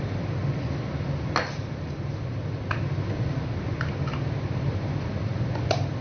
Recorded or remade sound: recorded